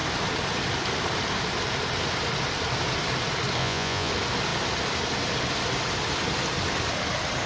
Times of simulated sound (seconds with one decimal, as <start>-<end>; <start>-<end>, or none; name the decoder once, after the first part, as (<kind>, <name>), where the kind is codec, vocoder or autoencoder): 3.6-4.1 (vocoder, Vocos)